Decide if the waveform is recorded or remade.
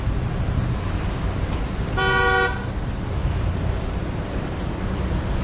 recorded